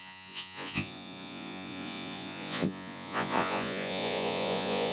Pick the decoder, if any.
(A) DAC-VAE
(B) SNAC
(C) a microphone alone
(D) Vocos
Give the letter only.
D